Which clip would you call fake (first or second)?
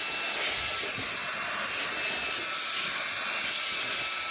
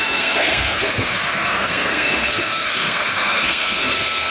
second